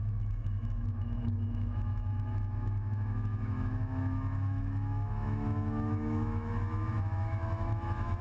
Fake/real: fake